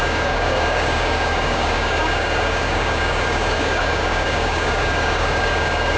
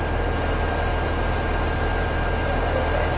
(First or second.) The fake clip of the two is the first